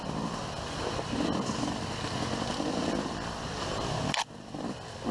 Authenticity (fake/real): real